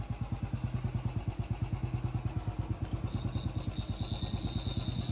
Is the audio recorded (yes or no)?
yes